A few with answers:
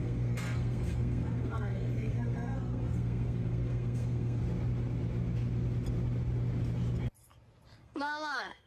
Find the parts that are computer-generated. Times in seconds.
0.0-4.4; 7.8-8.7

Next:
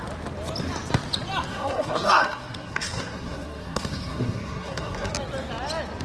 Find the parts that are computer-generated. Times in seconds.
1.5-5.1

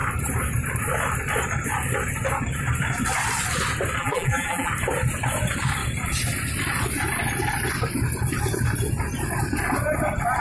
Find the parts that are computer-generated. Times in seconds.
4.0-4.7

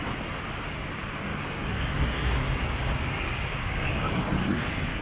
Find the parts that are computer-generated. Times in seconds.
1.3-4.3

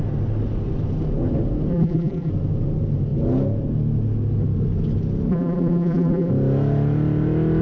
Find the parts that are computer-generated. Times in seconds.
1.7-2.3; 5.3-6.3

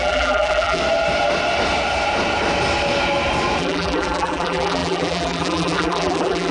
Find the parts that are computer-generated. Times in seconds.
0.0-0.8; 3.6-6.5

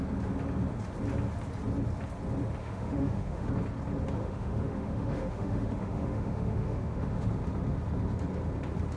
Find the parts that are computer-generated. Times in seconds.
2.6-3.5; 4.2-7.3

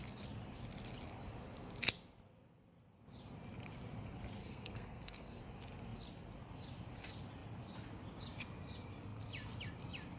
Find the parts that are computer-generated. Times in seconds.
4.4-5.4